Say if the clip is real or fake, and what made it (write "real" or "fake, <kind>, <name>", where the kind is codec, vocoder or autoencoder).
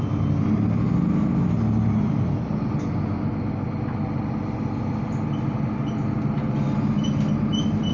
real